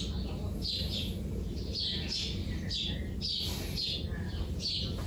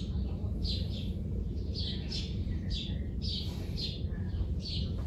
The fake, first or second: second